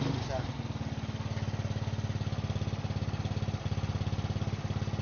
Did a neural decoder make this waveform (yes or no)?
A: no